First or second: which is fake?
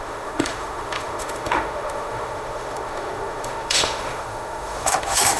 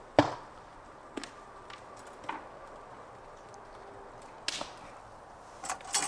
first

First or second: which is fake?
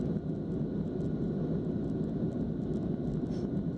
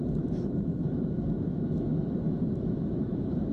second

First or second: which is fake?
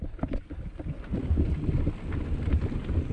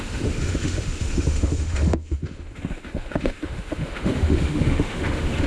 second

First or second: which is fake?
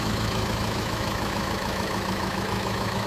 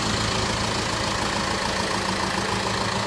first